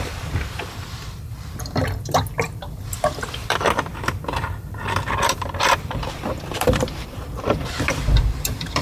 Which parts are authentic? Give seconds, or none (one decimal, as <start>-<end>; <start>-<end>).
3.9-5.1